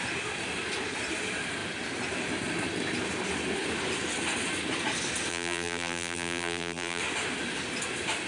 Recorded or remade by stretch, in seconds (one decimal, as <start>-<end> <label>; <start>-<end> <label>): 0.0-5.3 recorded; 5.3-7.0 remade; 7.0-8.3 recorded